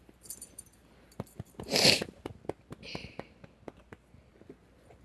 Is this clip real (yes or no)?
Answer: no